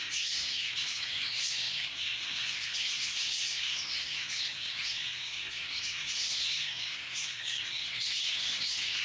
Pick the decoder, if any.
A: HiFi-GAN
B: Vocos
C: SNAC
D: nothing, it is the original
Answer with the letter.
C